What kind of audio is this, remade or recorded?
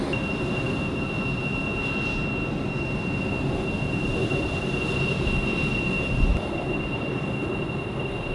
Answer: recorded